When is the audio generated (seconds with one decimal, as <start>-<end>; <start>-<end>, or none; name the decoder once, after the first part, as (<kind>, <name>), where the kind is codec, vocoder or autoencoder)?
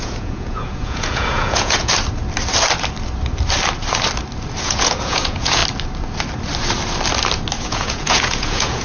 0.0-1.9 (vocoder, Vocos); 4.6-5.6; 7.6-8.8